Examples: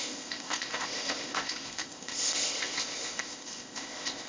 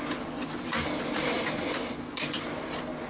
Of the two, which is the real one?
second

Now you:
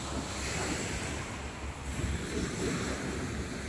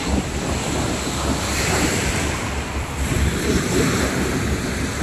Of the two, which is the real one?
first